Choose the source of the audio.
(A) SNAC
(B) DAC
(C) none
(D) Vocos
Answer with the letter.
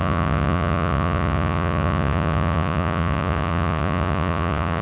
D